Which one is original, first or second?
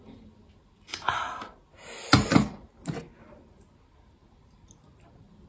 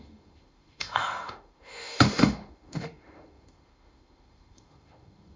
first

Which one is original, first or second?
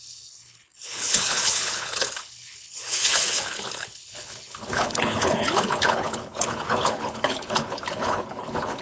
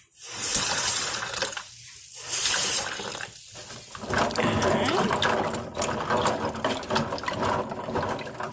second